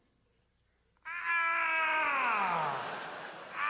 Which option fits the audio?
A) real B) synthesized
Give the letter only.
A